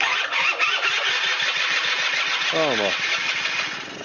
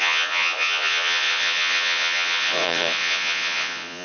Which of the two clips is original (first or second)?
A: first